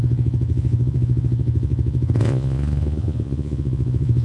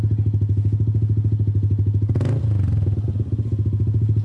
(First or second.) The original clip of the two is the second